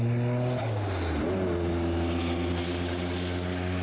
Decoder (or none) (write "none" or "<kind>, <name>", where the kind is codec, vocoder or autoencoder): none